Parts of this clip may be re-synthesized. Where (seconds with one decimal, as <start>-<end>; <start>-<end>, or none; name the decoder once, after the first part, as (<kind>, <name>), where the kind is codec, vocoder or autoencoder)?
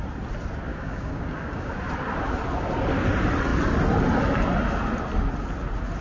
0.7-1.8 (codec, DAC)